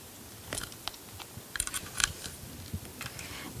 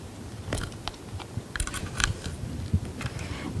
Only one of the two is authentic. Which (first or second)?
first